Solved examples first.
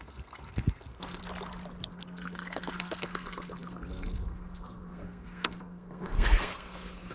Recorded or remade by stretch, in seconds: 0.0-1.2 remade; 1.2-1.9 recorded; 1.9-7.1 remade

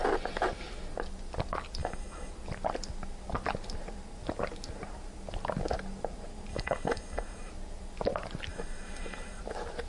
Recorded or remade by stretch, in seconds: 0.0-1.8 recorded; 1.8-2.3 remade; 2.3-6.5 recorded; 6.5-7.5 remade; 7.5-8.5 recorded; 8.5-9.4 remade; 9.4-9.9 recorded

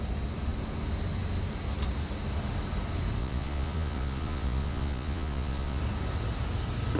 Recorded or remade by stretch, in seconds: 0.0-3.2 recorded; 3.2-5.8 remade; 5.8-7.0 recorded